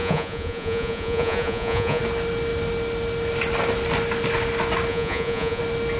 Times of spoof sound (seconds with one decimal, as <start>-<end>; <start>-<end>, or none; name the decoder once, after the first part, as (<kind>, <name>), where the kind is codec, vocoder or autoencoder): 0.0-2.0 (vocoder, Vocos); 4.9-5.6